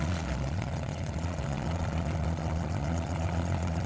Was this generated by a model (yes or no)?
yes